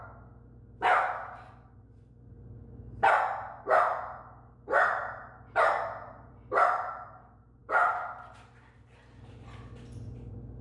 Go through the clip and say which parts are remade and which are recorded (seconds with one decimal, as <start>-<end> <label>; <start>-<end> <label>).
0.0-10.6 recorded